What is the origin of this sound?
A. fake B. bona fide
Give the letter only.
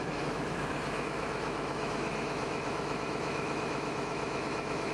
A